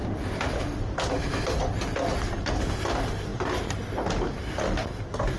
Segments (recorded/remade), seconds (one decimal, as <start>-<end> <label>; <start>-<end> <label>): 0.0-5.4 recorded